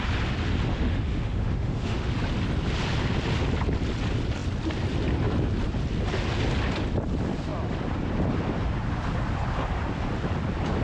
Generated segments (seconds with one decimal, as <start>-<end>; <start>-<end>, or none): 0.7-2.1